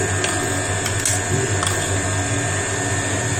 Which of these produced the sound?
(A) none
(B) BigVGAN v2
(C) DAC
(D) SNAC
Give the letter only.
A